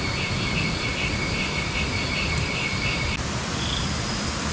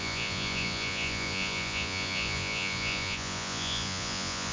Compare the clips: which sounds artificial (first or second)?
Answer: second